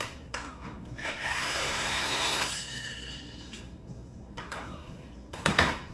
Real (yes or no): no